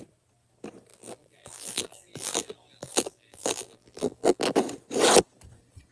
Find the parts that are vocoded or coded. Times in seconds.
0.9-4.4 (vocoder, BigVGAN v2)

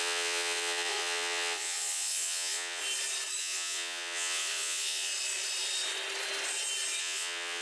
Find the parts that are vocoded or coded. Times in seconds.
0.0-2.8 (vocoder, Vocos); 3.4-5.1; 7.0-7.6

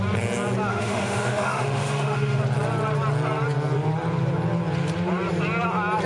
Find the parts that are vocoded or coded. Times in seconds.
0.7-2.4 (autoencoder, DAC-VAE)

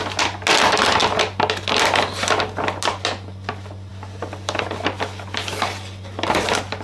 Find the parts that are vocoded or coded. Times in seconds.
none

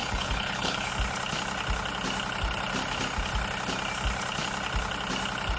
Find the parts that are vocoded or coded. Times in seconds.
0.0-0.9 (codec, HILCodec)

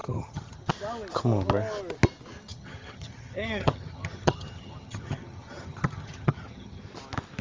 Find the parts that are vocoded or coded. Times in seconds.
0.0-0.7 (vocoder, HiFi-GAN); 2.5-6.9